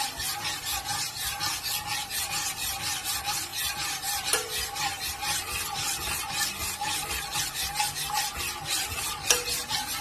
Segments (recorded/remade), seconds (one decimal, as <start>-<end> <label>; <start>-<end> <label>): 0.0-0.9 recorded; 0.9-1.4 remade; 1.4-3.5 recorded; 3.5-5.1 remade; 5.1-10.0 recorded